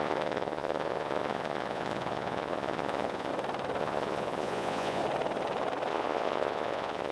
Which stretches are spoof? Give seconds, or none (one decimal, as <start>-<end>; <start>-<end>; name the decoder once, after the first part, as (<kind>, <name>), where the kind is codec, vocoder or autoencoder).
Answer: 0.0-3.3 (vocoder, Vocos); 3.8-5.0; 5.9-7.1

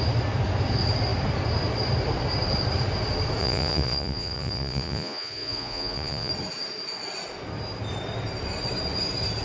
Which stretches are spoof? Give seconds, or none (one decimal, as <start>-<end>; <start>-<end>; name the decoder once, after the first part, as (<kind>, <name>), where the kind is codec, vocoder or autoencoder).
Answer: 3.4-6.3 (vocoder, Vocos)

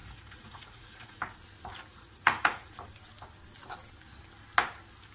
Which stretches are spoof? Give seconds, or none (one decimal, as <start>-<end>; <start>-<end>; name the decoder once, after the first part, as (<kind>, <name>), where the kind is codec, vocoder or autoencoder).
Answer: 0.0-1.2 (vocoder, Vocos); 1.9-2.7